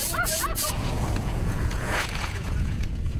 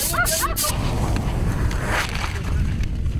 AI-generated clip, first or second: first